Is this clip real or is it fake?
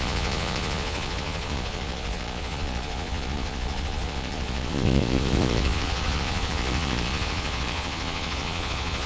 fake